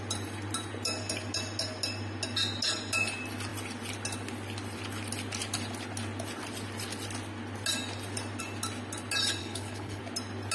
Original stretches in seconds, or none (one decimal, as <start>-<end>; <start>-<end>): 0.0-9.4; 10.0-10.5